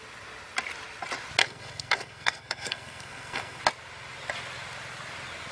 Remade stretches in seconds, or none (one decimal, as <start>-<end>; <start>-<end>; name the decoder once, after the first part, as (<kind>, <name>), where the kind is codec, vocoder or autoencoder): 1.4-3.6 (codec, SNAC)